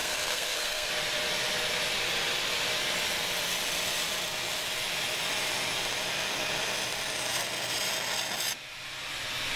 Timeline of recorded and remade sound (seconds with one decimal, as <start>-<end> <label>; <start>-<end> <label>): 0.0-0.9 remade; 0.9-9.6 recorded